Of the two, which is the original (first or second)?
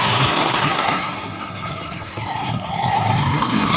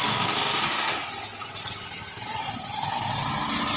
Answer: second